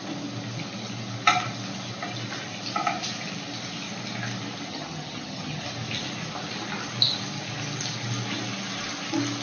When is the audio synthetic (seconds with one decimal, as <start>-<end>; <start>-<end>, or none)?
4.7-5.6